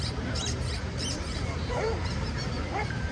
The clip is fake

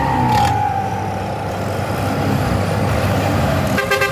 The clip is real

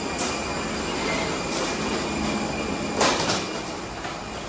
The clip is real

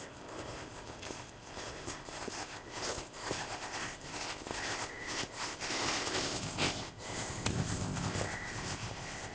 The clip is fake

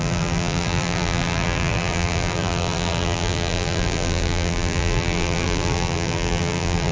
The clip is fake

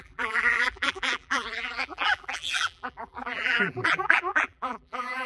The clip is fake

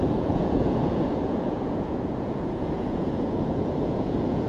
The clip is fake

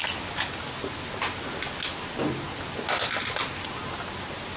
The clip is real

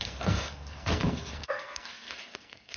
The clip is fake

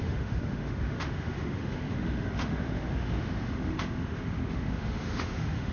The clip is fake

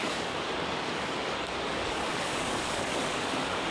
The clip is fake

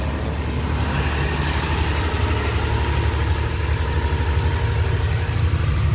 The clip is real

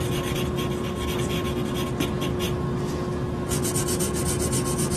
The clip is real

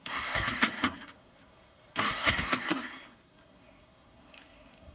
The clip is fake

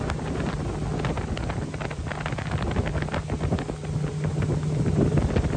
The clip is real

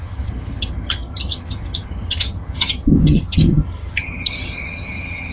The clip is fake